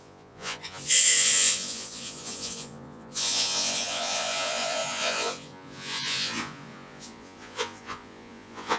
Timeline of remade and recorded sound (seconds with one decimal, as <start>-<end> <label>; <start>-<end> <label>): 0.0-8.8 remade